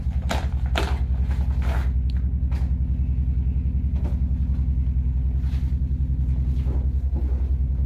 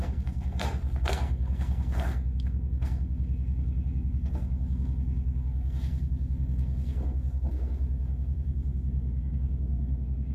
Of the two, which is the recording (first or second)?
first